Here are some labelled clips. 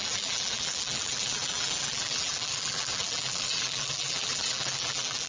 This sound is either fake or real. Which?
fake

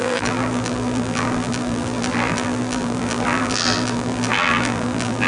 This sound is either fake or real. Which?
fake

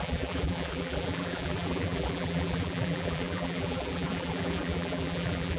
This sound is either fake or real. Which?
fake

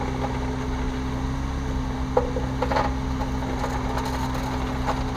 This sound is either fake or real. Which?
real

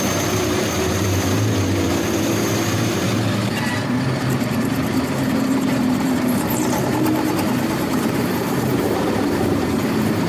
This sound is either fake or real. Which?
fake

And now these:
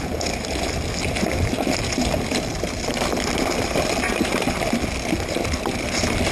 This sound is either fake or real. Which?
fake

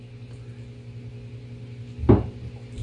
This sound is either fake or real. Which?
real